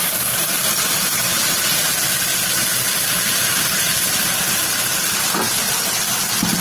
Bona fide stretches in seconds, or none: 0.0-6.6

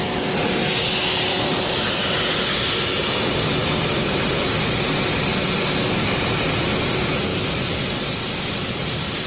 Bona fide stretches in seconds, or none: 0.0-9.3

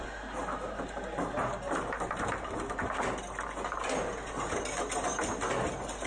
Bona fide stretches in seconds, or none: 0.0-6.1

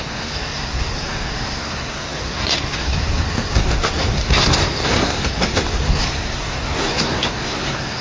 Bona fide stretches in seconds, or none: none

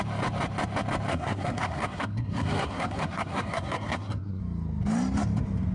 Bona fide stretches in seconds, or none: 0.0-1.1; 4.4-5.7

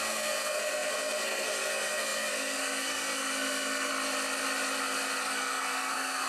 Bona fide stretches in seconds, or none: 3.9-5.2